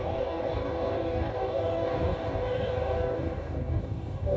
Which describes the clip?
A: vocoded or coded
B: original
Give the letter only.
A